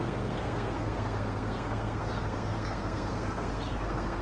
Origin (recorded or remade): remade